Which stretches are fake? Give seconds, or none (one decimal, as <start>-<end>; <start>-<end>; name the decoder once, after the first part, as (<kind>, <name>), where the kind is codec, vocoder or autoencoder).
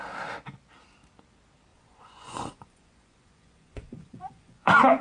1.7-5.0 (vocoder, Vocos)